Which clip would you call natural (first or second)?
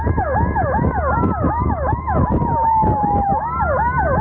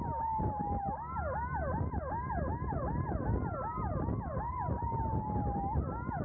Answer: second